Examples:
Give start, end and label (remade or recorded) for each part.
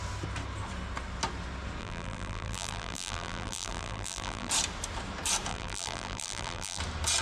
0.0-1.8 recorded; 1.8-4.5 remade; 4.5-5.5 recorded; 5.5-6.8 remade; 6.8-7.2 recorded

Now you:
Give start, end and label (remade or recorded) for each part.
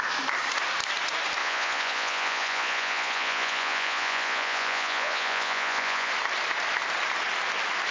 0.0-1.4 recorded; 1.4-6.1 remade; 6.1-7.9 recorded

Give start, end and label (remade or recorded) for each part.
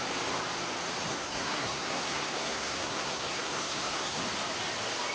0.0-1.1 recorded; 1.1-4.2 remade; 4.2-5.1 recorded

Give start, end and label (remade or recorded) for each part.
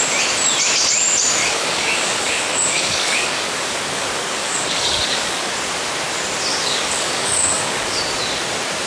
0.0-1.4 recorded; 1.4-5.5 remade; 5.5-6.5 recorded; 6.5-8.0 remade; 8.0-8.9 recorded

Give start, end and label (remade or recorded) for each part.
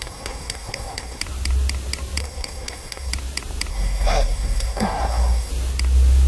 0.0-1.2 remade; 1.2-2.2 recorded; 2.2-3.1 remade; 3.1-3.7 recorded; 3.7-5.5 remade; 5.5-6.3 recorded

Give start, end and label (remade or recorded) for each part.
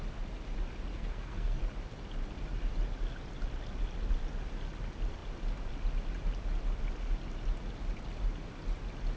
0.0-0.9 recorded; 0.9-1.6 remade; 1.6-9.2 recorded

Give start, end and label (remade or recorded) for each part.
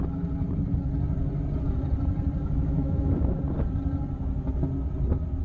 0.0-2.4 recorded; 2.4-3.4 remade; 3.4-5.4 recorded